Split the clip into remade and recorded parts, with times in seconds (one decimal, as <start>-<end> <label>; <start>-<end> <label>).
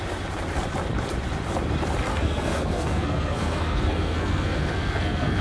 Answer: 0.0-2.1 recorded; 2.1-5.4 remade